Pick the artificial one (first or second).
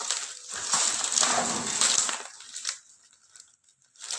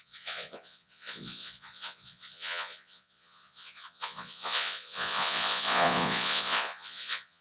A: second